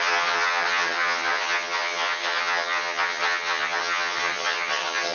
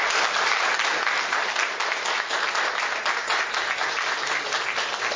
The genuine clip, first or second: second